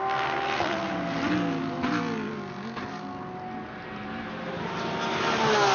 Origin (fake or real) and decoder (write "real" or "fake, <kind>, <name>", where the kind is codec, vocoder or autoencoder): real